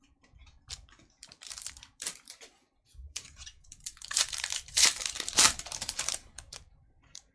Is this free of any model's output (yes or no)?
no